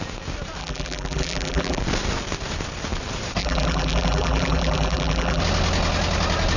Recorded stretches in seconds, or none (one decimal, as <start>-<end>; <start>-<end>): 0.0-0.6; 1.8-3.4; 5.4-6.6